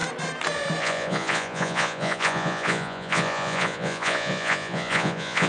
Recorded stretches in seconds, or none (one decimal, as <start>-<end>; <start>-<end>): 0.0-0.8

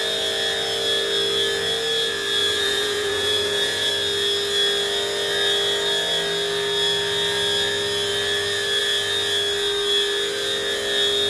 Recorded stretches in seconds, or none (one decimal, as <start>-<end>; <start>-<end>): 0.0-2.4; 3.9-11.3

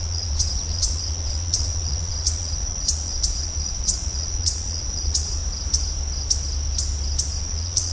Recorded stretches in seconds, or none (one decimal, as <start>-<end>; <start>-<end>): 5.4-7.4

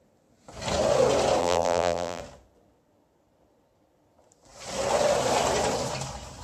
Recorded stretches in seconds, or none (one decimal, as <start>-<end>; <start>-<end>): 0.0-1.4; 2.2-6.4

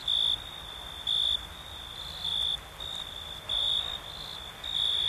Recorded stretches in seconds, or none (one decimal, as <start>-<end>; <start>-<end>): 0.0-5.1

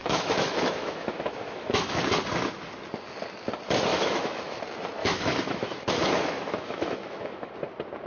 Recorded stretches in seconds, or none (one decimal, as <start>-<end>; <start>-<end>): 2.0-3.9; 4.6-5.0; 7.5-8.1

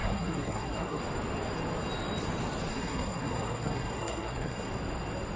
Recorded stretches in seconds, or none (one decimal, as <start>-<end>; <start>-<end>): 1.0-2.7; 4.7-5.4

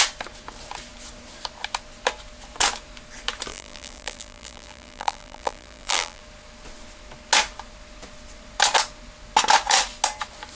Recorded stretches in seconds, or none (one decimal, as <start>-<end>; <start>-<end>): 0.0-3.5; 6.2-10.5